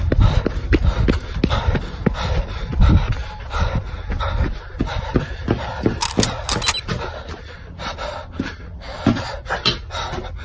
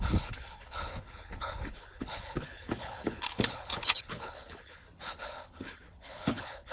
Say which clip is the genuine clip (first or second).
first